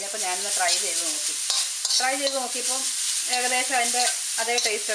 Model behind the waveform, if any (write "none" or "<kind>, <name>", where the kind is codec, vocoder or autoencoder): none